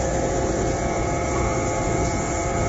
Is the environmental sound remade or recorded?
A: remade